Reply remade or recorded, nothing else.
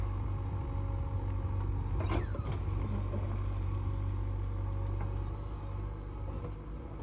recorded